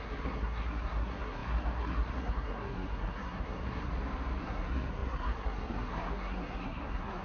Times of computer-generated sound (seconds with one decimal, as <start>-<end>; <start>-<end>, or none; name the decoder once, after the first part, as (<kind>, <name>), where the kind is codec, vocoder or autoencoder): 0.0-3.9 (codec, SNAC); 4.4-7.2